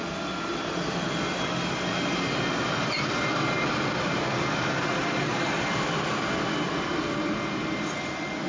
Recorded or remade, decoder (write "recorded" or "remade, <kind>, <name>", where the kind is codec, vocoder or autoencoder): recorded